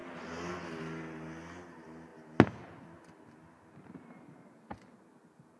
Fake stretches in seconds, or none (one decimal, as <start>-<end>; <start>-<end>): none